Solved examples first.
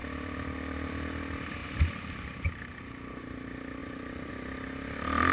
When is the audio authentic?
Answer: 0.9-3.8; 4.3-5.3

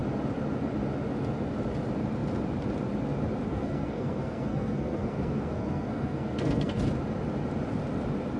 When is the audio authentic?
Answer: 0.0-3.5; 6.8-8.4

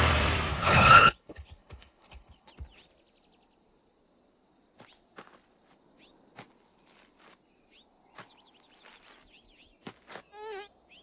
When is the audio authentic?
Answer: 0.0-0.5; 2.5-11.0

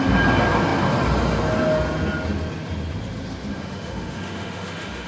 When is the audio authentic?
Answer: 0.0-3.5

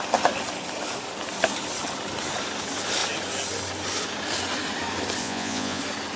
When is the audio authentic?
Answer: 0.0-5.2; 5.8-6.2